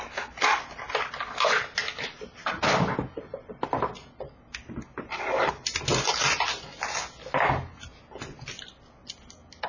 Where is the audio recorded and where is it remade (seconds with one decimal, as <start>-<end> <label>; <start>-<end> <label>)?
0.0-9.7 recorded